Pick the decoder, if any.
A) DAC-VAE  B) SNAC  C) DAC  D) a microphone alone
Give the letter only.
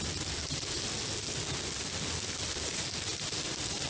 D